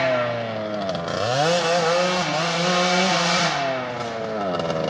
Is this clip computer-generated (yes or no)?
no